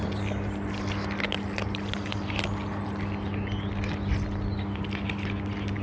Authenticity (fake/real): real